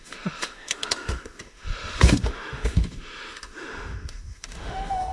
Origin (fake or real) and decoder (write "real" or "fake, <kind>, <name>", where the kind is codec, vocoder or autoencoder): fake, autoencoder, DAC-VAE